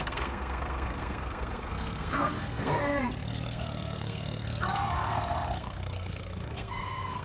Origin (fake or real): fake